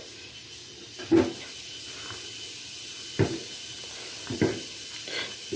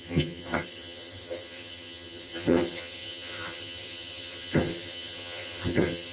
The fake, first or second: second